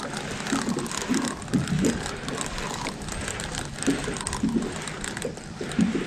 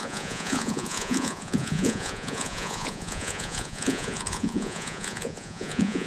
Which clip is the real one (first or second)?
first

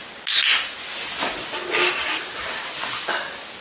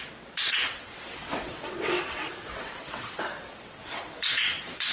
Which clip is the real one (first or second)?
first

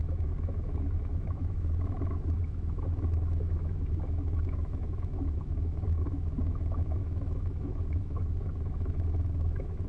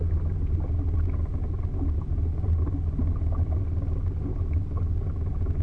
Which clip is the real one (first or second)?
second